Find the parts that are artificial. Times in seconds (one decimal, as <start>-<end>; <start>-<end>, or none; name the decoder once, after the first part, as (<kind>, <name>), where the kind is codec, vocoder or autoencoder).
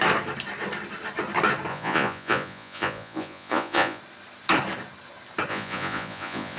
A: 1.7-4.0 (vocoder, Vocos); 5.5-6.6